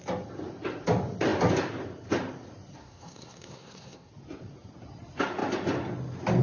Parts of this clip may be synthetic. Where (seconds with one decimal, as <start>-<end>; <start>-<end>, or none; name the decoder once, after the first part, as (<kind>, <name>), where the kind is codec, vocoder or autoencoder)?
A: 2.8-4.1 (codec, SNAC)